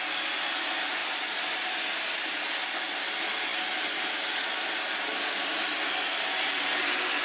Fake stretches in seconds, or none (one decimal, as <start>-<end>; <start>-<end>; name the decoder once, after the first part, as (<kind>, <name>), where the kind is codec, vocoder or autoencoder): none